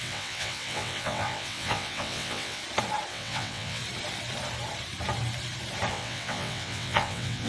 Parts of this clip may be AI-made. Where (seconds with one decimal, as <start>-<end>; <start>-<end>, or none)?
0.0-2.6; 3.1-3.8; 5.9-7.5